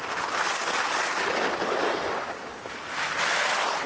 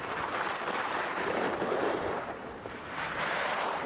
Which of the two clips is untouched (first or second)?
first